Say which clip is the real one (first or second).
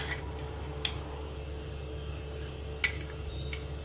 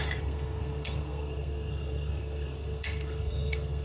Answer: first